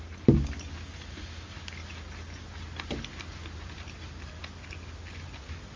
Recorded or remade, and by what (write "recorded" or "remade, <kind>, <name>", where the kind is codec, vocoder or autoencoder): recorded